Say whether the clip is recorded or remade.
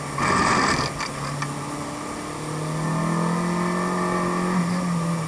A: recorded